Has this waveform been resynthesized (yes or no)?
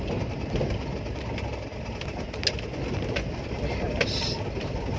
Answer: no